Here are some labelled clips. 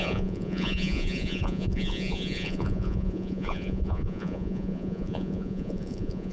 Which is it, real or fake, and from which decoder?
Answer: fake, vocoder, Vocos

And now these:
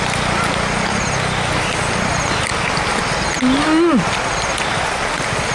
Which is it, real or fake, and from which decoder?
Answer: real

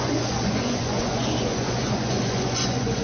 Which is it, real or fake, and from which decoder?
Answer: fake, vocoder, Vocos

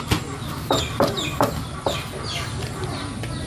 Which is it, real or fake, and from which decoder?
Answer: real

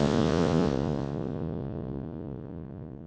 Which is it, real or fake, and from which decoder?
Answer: fake, vocoder, Vocos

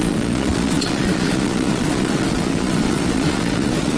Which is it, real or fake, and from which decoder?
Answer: fake, vocoder, Vocos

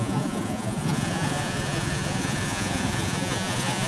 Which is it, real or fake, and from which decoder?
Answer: fake, vocoder, Vocos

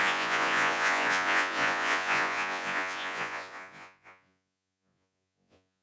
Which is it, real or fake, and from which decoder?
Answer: fake, vocoder, Vocos